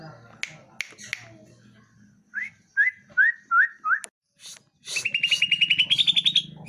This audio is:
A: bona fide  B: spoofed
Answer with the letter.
A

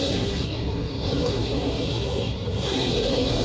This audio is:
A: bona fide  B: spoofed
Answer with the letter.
B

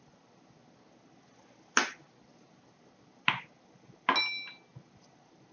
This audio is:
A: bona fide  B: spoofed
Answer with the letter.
A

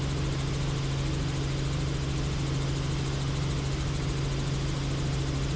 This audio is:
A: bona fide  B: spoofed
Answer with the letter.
A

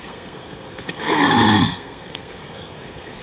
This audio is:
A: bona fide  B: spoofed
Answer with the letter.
B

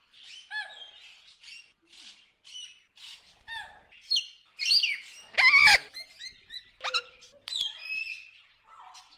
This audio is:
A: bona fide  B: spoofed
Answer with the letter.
A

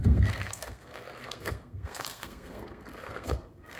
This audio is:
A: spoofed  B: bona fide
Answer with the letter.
A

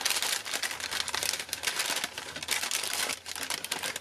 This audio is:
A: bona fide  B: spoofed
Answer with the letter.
A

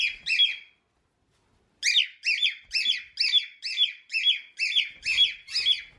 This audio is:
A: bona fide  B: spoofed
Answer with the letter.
A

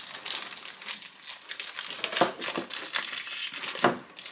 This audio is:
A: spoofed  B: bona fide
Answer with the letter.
B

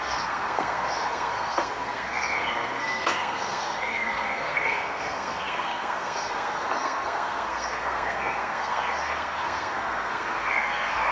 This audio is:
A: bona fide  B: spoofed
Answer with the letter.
B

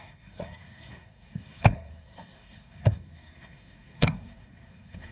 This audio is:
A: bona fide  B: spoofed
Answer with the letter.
B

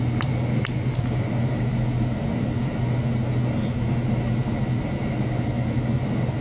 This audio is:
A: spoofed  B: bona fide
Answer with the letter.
B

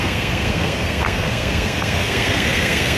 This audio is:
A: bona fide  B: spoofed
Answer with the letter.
B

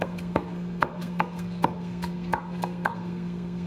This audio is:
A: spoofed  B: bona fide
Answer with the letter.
A